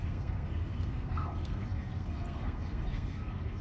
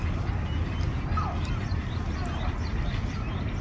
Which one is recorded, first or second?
second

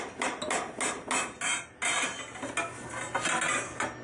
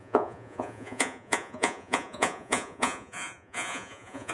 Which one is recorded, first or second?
first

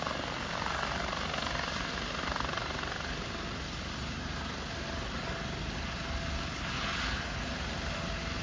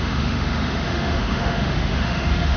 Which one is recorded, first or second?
first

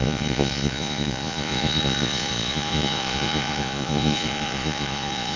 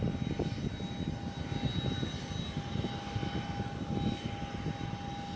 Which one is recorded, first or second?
second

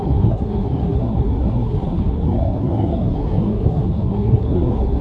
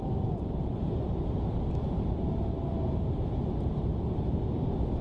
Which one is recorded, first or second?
second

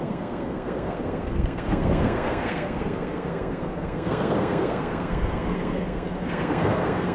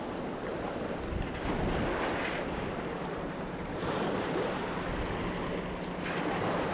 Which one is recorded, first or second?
second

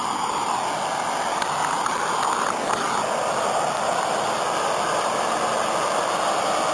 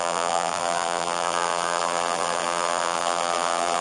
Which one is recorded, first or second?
first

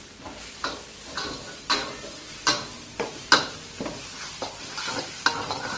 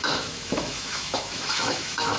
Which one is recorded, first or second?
first